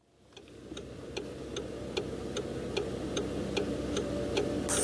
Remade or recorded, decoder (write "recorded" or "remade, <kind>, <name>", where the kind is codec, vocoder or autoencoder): recorded